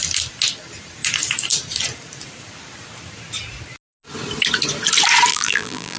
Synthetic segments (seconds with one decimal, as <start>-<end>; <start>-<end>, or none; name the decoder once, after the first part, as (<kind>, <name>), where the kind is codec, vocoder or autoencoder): 5.3-6.0 (vocoder, BigVGAN v2)